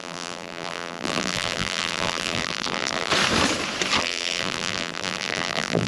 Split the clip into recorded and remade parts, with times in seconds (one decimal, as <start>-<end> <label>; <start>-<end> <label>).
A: 0.0-3.1 remade; 3.1-4.0 recorded; 4.0-5.9 remade